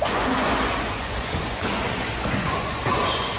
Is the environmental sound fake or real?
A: fake